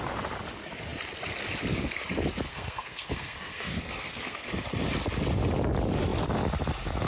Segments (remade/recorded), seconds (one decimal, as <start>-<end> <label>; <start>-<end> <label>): 0.0-2.5 recorded; 2.5-4.5 remade; 4.5-7.1 recorded